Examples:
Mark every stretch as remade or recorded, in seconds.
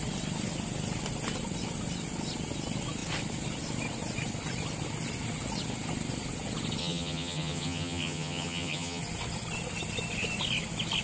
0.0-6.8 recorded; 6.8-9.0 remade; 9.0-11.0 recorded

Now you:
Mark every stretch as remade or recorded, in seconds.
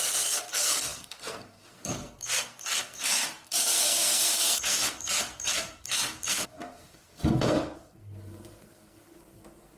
0.0-9.8 remade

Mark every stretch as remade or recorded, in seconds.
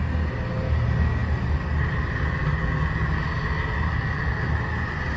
0.0-5.2 recorded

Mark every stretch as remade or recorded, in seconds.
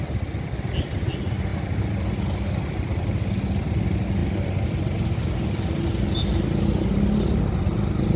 0.0-8.2 recorded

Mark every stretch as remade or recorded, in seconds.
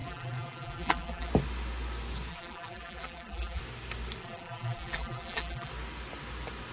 0.0-1.3 remade; 1.3-2.3 recorded; 2.3-3.6 remade; 3.6-4.2 recorded; 4.2-5.7 remade; 5.7-6.7 recorded